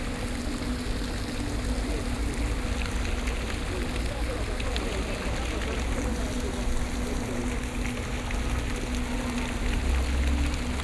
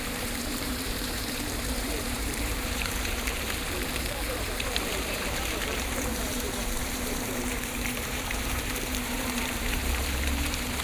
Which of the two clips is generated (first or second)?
second